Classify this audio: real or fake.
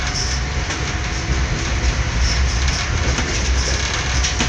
real